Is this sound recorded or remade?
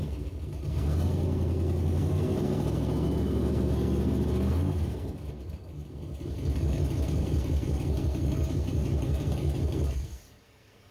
remade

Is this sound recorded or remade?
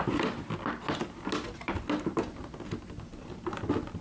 recorded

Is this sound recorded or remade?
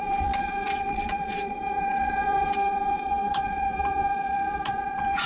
remade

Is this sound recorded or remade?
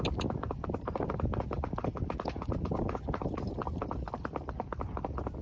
recorded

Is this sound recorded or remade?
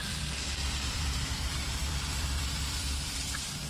remade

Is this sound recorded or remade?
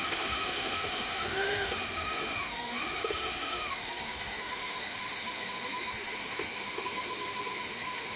remade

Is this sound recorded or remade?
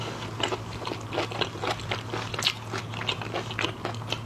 recorded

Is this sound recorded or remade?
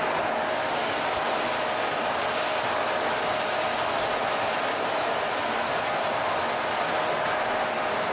recorded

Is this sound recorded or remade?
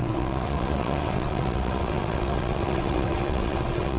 remade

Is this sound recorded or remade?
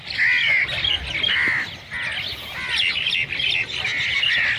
recorded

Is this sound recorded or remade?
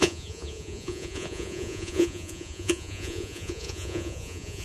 remade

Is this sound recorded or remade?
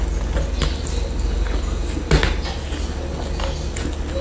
recorded